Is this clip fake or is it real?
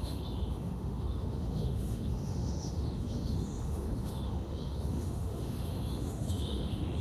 fake